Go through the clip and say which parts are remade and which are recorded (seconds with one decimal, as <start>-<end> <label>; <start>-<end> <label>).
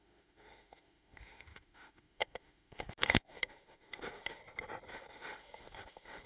0.0-4.4 remade; 4.4-4.9 recorded; 4.9-6.3 remade